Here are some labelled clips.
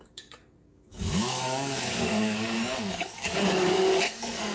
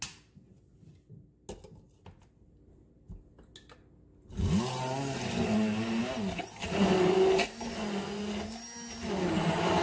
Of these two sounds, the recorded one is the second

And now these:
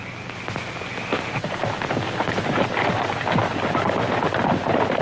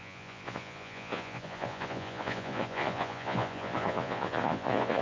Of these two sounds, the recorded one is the first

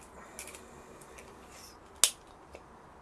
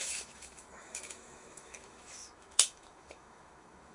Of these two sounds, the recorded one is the first